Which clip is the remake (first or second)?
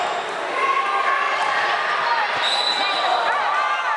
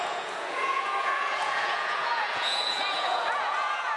second